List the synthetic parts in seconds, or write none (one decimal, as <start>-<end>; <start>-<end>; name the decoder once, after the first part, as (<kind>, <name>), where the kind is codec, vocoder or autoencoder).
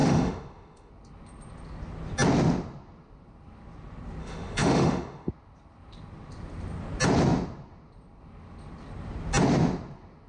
0.0-0.9 (autoencoder, DAC-VAE); 4.2-5.3